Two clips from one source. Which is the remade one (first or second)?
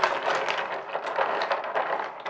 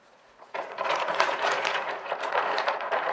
second